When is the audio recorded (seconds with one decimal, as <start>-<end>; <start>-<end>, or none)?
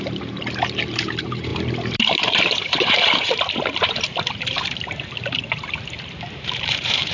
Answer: none